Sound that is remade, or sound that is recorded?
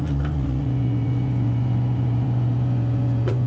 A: remade